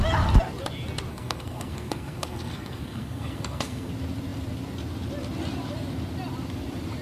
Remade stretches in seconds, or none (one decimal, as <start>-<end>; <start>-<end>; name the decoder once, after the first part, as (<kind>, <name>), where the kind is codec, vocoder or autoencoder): 1.1-3.9 (codec, SNAC)